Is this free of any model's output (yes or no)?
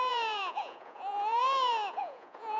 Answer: no